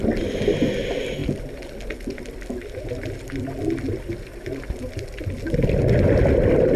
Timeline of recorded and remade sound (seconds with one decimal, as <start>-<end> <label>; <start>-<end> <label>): 0.0-6.8 recorded

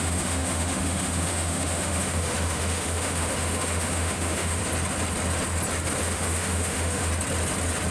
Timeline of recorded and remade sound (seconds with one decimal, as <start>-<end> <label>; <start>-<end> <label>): 0.0-4.6 remade; 4.6-6.0 recorded; 6.0-7.1 remade; 7.1-7.9 recorded

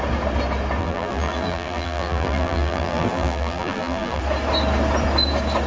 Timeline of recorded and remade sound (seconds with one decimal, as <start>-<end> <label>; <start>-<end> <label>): 0.0-0.8 recorded; 0.8-4.2 remade; 4.2-5.7 recorded

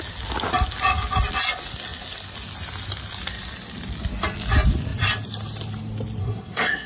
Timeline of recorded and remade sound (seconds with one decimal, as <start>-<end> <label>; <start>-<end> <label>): 0.0-6.2 recorded; 6.2-6.9 remade

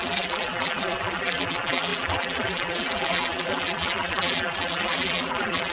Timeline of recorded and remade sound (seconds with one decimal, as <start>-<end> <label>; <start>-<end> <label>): 0.0-5.7 remade